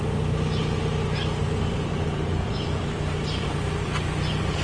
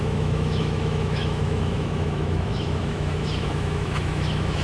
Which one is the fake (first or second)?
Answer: second